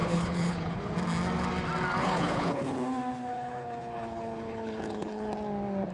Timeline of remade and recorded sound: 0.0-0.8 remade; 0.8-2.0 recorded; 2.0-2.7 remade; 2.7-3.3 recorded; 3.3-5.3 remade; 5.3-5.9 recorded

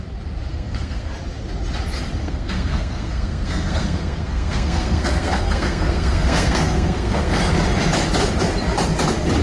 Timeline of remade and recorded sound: 0.0-0.5 recorded; 0.5-1.1 remade; 1.1-2.2 recorded; 2.2-7.4 remade; 7.4-9.4 recorded

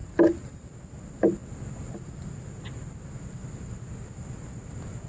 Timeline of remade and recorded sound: 0.0-0.7 remade; 0.7-5.1 recorded

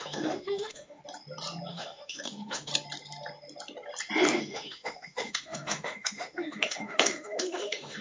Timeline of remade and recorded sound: 0.0-1.0 remade; 1.0-1.7 recorded; 1.7-2.7 remade; 2.7-4.4 recorded; 4.4-8.0 remade

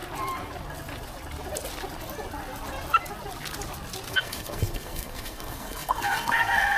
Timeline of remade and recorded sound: 0.0-4.1 recorded; 4.1-6.8 remade

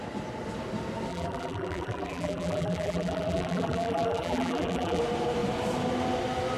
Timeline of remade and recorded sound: 0.0-1.1 recorded; 1.1-5.0 remade; 5.0-6.6 recorded

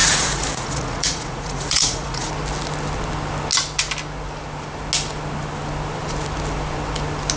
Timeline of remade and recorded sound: 0.0-2.3 remade; 2.3-7.4 recorded

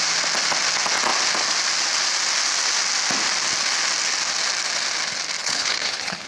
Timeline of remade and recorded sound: 0.0-5.4 recorded; 5.4-6.3 remade